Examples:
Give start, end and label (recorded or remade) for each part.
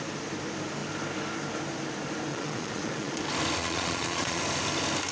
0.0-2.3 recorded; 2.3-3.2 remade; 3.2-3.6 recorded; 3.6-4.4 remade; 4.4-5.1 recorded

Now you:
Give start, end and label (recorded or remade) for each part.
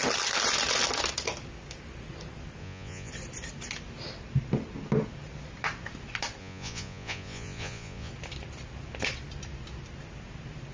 0.0-2.6 recorded; 2.6-3.1 remade; 3.1-6.4 recorded; 6.4-8.1 remade; 8.1-10.7 recorded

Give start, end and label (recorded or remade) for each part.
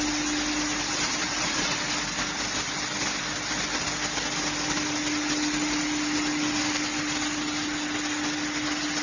0.0-1.2 recorded; 1.2-1.9 remade; 1.9-9.0 recorded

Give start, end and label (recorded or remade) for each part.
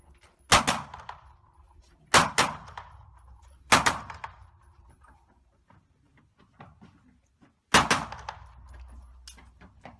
0.0-2.2 recorded; 2.2-6.2 remade; 6.2-10.0 recorded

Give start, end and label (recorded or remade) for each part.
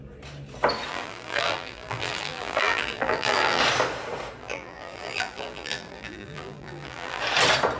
0.0-0.9 recorded; 0.9-3.6 remade; 3.6-4.4 recorded; 4.4-7.2 remade; 7.2-7.8 recorded